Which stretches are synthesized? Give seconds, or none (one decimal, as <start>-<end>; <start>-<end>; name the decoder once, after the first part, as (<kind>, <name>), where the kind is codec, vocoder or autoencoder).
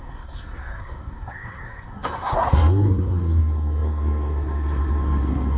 0.0-5.6 (codec, SNAC)